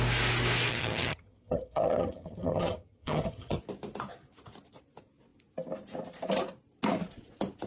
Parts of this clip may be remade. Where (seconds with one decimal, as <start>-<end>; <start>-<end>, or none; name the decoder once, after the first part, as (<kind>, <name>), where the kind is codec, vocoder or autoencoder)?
0.7-3.6 (vocoder, HiFi-GAN)